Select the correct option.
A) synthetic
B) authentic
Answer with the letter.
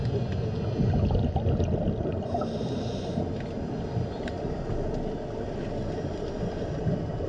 B